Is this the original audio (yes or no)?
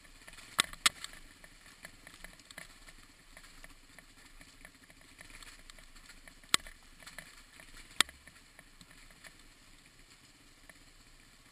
yes